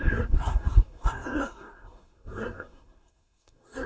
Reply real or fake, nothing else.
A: fake